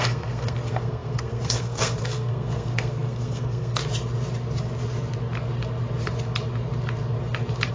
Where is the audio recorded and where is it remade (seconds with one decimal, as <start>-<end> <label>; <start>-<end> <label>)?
0.0-3.8 remade; 3.8-7.7 recorded